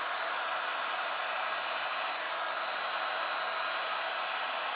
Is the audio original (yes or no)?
yes